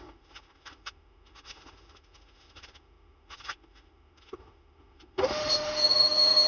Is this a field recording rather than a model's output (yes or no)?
no